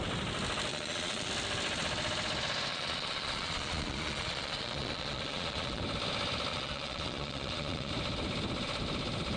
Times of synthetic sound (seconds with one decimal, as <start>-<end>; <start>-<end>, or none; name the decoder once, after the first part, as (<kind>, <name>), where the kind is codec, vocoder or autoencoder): 0.7-1.3 (vocoder, Vocos); 2.7-5.8; 6.5-7.9